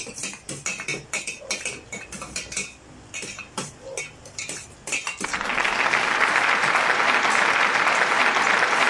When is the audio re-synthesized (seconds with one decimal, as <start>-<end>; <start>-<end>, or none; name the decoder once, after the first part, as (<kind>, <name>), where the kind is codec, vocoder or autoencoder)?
none